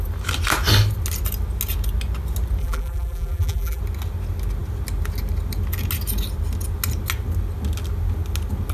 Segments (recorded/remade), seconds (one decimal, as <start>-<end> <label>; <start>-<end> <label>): 0.0-2.6 recorded; 2.6-3.8 remade; 3.8-8.7 recorded